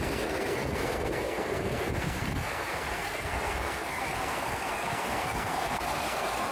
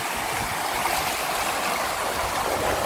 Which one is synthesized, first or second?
first